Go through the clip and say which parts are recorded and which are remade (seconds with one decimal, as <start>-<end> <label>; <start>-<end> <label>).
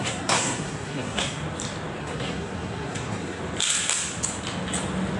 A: 0.0-1.4 remade; 1.4-2.0 recorded; 2.0-3.4 remade; 3.4-5.2 recorded